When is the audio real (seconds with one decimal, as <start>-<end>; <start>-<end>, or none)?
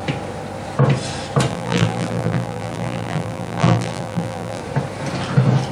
0.0-1.5; 4.6-5.7